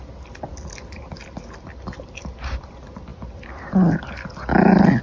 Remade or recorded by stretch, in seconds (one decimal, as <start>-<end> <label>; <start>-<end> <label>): 0.0-5.0 recorded